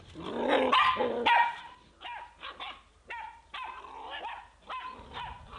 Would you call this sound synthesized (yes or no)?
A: no